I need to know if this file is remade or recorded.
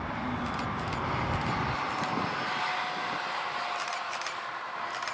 recorded